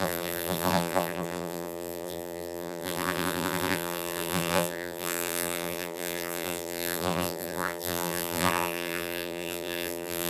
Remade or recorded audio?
remade